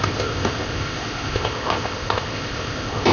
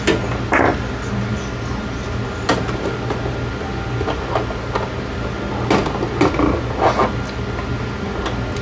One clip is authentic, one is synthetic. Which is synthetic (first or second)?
first